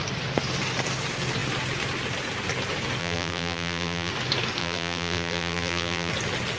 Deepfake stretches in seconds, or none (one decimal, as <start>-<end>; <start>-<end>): 3.0-4.1; 4.6-6.1